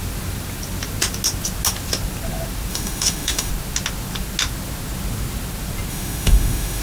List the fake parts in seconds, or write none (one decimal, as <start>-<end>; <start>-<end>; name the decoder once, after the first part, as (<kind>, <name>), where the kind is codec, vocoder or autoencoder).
2.7-3.5 (autoencoder, DAC-VAE); 5.9-6.8